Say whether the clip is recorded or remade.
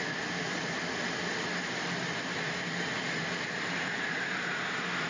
recorded